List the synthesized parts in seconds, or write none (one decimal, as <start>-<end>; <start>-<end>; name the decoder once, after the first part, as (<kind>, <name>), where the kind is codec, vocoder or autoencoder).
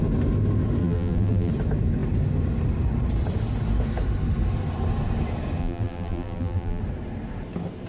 0.8-1.5 (vocoder, BigVGAN v2); 5.6-6.8